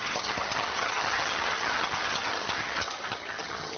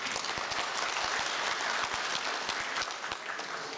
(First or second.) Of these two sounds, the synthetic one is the first